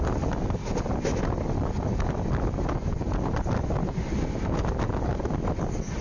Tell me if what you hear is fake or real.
real